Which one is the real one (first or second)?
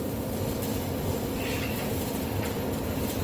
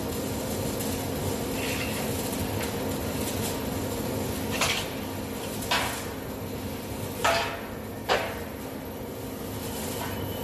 second